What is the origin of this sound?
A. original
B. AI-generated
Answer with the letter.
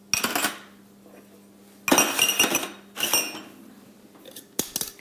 A